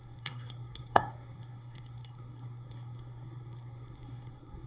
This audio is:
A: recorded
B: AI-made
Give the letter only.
B